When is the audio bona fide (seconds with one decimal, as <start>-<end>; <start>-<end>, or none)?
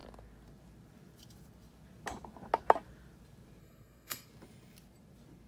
0.0-3.6; 4.3-5.5